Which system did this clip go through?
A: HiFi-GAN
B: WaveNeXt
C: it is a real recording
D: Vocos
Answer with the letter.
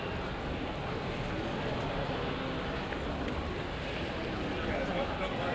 C